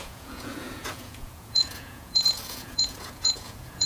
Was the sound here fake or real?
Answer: fake